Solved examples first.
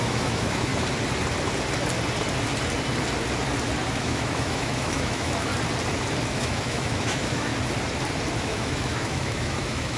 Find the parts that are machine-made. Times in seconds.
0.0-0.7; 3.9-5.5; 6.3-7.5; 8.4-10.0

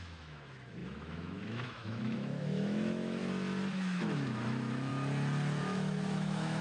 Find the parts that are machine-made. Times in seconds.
0.0-3.2; 3.7-4.9; 5.6-6.6

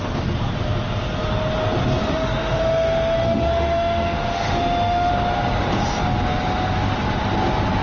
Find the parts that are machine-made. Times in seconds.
2.0-5.1

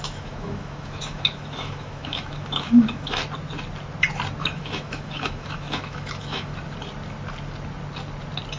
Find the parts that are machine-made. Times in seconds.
0.0-3.2; 4.4-6.5

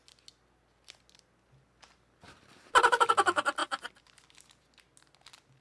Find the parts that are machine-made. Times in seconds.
none

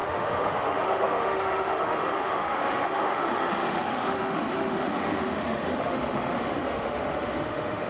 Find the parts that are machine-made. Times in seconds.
0.0-7.9

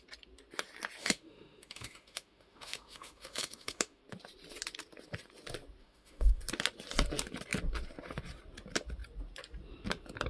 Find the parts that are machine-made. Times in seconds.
1.0-4.0; 5.8-6.4

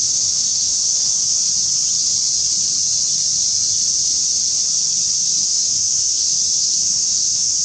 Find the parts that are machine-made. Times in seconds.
0.0-1.4; 5.4-7.6